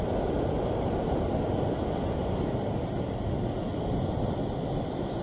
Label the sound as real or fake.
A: real